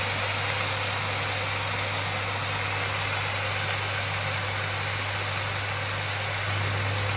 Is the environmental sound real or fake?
real